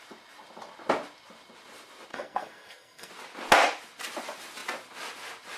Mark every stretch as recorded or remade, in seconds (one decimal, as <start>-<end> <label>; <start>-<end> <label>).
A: 0.0-2.1 recorded; 2.1-3.1 remade; 3.1-5.6 recorded